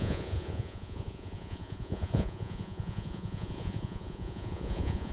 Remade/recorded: remade